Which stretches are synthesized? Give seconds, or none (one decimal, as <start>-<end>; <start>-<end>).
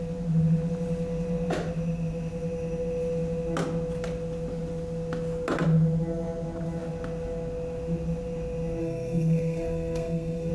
8.8-10.5